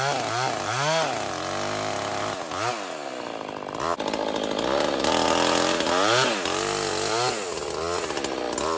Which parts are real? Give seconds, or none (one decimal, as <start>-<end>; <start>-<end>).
0.0-8.8